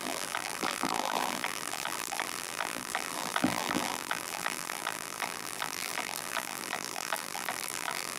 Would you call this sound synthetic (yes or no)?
yes